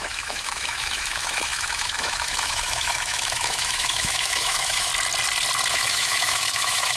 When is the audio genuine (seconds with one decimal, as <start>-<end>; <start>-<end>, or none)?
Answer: 4.9-5.7